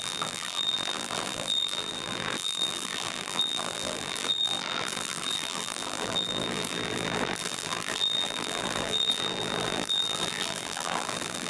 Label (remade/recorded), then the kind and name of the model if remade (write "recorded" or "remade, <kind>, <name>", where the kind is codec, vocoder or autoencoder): remade, vocoder, BigVGAN v2